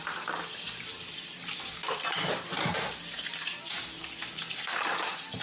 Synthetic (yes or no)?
yes